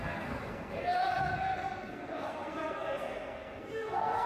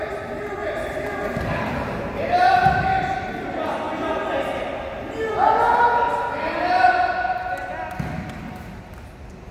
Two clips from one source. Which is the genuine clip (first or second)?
second